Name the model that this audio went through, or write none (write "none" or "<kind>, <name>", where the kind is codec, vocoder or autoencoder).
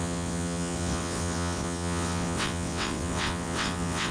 vocoder, WaveNeXt